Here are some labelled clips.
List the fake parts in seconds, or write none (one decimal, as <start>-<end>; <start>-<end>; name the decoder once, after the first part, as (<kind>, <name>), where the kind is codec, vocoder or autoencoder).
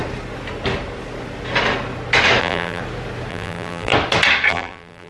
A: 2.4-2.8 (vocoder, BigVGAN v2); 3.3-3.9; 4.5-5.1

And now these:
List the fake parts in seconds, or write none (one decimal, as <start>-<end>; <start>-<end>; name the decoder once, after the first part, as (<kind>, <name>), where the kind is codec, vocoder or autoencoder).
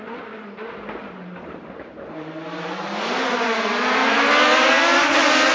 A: 1.2-4.3 (vocoder, BigVGAN v2)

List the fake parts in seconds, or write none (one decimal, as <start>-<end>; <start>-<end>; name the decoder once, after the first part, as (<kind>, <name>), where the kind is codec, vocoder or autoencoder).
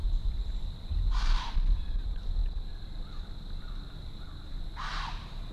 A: 0.0-1.5 (vocoder, BigVGAN v2)